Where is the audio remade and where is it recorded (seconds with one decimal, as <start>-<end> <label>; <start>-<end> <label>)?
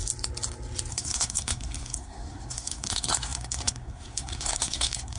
0.0-0.9 recorded; 0.9-5.2 remade